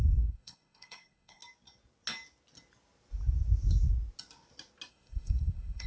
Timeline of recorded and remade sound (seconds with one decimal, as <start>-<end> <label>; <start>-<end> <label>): 0.0-1.4 remade; 1.4-4.9 recorded; 4.9-5.9 remade